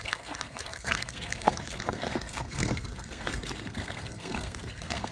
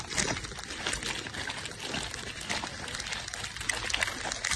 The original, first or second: second